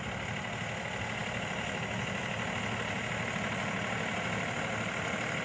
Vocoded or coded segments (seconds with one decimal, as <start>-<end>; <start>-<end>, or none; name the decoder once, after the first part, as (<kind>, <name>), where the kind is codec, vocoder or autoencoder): none

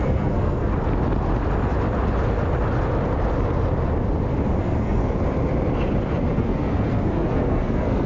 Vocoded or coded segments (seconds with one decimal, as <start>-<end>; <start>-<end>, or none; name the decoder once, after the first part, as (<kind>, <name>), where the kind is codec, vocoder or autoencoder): 0.0-0.7 (codec, SNAC); 4.6-5.0; 6.3-8.1

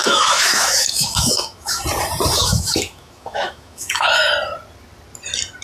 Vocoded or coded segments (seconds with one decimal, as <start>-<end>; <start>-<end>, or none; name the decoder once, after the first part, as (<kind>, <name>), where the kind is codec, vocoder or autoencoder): 0.0-1.8 (autoencoder, DAC-VAE); 2.4-4.3

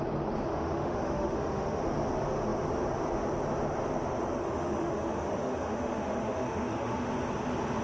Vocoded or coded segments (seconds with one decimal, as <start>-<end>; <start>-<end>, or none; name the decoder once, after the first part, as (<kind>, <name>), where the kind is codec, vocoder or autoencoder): 0.5-1.8 (autoencoder, DAC-VAE); 4.4-7.1

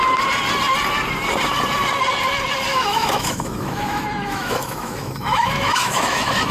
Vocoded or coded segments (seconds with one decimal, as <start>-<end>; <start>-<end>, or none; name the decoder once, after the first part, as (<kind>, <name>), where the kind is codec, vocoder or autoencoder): 2.7-6.5 (autoencoder, DAC-VAE)

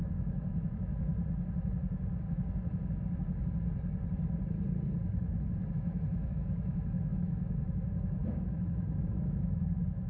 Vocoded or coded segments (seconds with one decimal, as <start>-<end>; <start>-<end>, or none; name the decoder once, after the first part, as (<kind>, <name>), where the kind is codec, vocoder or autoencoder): 0.0-1.1 (autoencoder, DAC-VAE); 5.7-10.1

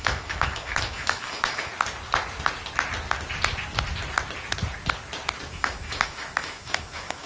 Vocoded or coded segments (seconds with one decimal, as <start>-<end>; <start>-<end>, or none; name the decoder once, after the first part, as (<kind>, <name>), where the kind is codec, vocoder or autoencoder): 0.0-1.7 (autoencoder, DAC-VAE); 5.5-7.3